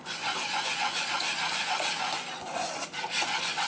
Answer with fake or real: fake